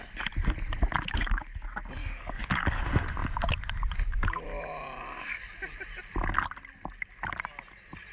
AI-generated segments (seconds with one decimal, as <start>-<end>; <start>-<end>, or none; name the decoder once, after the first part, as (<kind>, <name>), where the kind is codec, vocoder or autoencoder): 2.0-2.8 (codec, DAC)